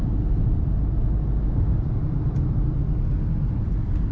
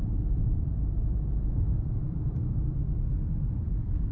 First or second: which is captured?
first